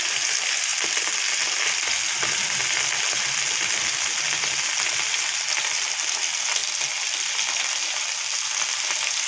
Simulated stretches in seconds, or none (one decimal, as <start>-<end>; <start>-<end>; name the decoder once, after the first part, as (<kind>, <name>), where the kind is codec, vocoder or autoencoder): none